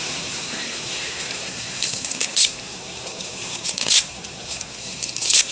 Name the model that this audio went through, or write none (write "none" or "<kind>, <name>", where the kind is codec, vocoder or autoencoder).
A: codec, SNAC